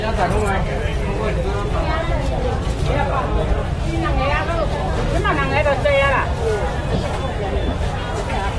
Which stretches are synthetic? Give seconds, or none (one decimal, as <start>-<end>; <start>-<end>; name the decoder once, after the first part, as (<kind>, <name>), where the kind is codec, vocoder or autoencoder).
none